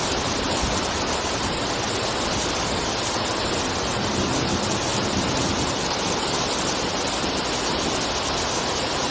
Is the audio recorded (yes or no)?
yes